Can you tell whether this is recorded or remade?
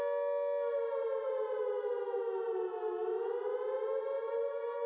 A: recorded